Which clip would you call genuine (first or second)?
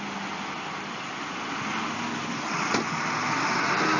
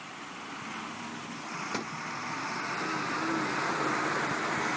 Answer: first